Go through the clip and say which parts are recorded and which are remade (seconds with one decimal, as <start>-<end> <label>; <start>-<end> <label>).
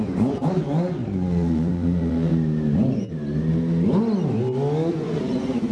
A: 0.0-2.3 remade; 2.3-4.9 recorded; 4.9-5.7 remade